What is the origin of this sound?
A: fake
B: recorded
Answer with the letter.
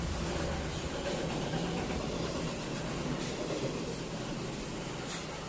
B